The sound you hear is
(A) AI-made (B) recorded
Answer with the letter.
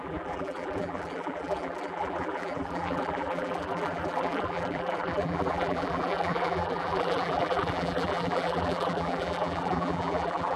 A